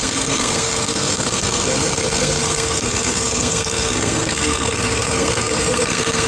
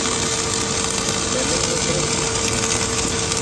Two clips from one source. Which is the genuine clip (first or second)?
second